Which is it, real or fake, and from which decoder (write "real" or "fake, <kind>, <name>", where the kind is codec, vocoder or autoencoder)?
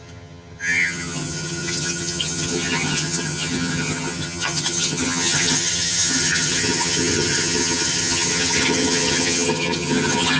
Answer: fake, vocoder, HiFi-GAN